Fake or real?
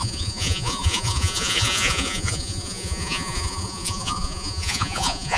fake